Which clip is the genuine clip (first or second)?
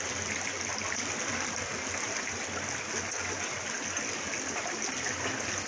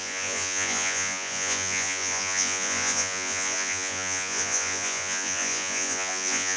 first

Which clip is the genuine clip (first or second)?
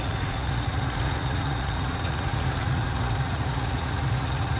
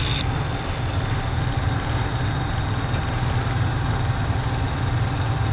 second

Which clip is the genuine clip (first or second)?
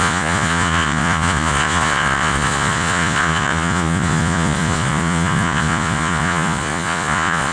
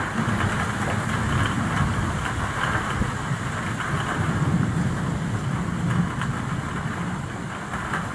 second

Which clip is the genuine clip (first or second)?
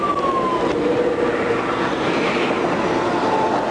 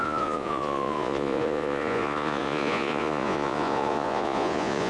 first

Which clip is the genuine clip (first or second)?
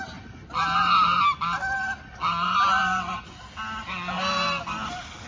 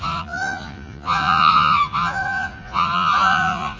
first